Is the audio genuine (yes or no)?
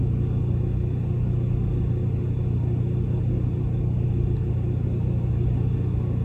yes